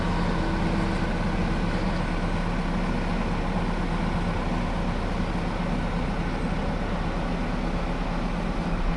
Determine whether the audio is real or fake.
real